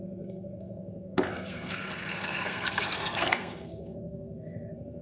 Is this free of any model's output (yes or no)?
no